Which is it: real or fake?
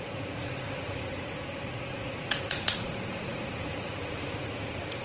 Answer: fake